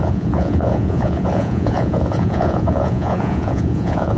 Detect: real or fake fake